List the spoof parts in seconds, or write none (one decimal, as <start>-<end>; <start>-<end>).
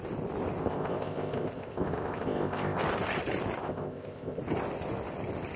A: 0.6-2.8; 3.6-4.4